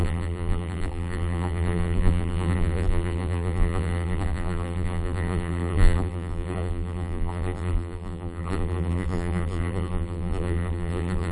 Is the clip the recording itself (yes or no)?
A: no